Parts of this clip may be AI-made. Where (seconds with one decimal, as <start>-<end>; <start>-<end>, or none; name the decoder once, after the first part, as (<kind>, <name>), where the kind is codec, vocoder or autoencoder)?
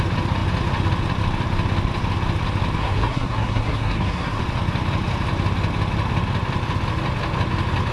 2.8-4.4 (codec, SNAC)